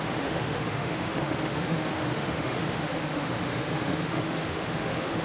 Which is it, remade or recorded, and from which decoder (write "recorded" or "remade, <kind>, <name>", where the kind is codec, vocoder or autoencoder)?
remade, autoencoder, DAC-VAE